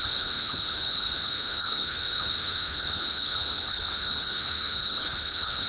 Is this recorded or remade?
remade